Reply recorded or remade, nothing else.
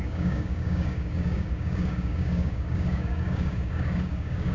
remade